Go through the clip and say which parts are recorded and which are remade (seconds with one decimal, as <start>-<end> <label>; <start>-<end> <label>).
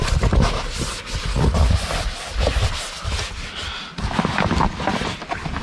0.0-5.6 recorded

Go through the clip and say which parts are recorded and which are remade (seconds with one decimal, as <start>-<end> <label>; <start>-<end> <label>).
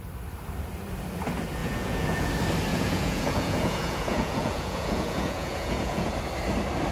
0.0-1.6 recorded; 1.6-2.3 remade; 2.3-2.7 recorded; 2.7-6.1 remade; 6.1-6.9 recorded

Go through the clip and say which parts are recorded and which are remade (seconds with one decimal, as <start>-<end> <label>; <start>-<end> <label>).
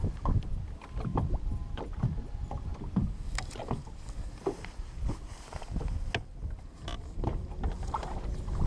0.0-8.7 recorded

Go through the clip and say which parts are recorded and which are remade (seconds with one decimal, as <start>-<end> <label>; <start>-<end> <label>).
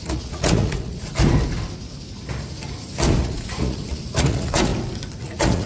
0.0-1.1 remade; 1.1-3.2 recorded; 3.2-4.7 remade; 4.7-5.2 recorded; 5.2-5.7 remade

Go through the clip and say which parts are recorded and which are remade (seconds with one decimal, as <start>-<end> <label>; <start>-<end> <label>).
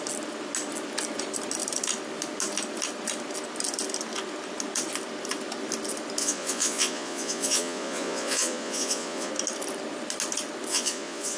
0.0-6.2 recorded; 6.2-9.3 remade; 9.3-10.7 recorded; 10.7-11.4 remade